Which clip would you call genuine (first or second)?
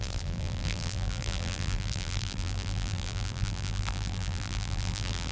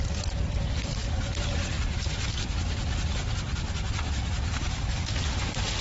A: second